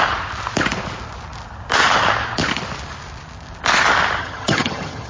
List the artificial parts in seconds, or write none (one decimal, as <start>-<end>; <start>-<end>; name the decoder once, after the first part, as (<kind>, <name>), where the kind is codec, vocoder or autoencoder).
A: 4.2-5.1 (vocoder, HiFi-GAN)